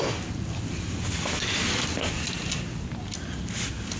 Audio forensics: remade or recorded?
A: recorded